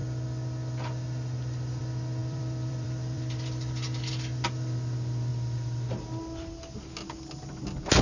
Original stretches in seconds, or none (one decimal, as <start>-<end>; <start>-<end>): 0.0-2.2; 4.1-5.3; 6.7-8.0